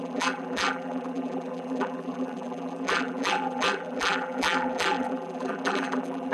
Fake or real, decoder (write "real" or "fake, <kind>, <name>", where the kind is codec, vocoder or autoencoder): fake, vocoder, BigVGAN v2